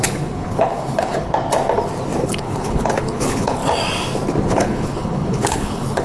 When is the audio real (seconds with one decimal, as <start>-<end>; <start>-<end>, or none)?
1.4-2.2; 3.6-4.4